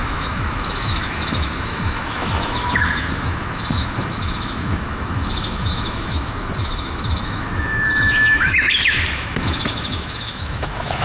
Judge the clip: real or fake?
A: fake